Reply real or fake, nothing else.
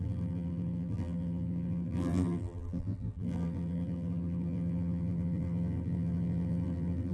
fake